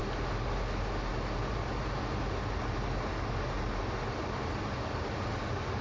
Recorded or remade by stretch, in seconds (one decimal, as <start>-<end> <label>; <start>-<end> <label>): 0.0-5.8 recorded